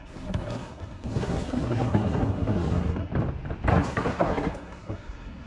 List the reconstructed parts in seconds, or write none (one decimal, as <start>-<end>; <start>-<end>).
0.0-3.1; 3.7-5.5